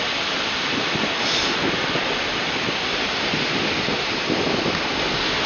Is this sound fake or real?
fake